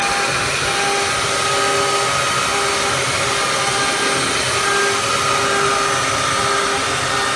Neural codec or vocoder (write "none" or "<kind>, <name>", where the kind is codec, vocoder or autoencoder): none